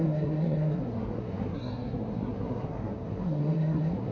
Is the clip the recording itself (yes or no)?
no